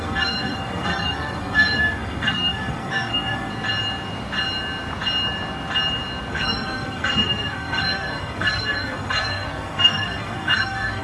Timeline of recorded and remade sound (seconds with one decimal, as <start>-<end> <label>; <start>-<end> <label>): 0.0-3.5 remade; 3.5-6.3 recorded; 6.3-11.0 remade